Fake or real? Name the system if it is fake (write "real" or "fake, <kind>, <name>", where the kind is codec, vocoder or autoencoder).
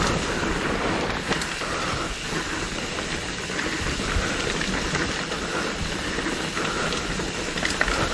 real